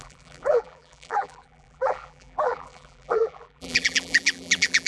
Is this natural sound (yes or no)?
no